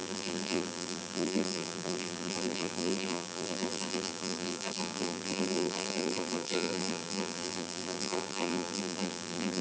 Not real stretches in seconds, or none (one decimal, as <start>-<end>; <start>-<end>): 0.0-9.6